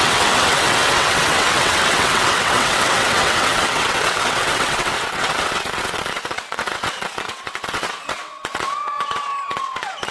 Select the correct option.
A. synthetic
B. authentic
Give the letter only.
A